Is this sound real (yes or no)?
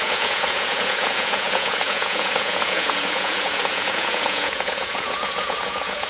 no